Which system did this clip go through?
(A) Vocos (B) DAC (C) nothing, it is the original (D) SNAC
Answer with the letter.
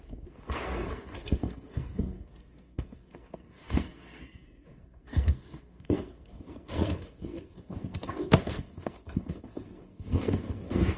D